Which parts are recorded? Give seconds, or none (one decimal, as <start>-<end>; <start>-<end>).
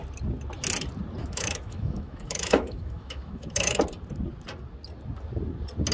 0.0-1.2; 3.8-5.9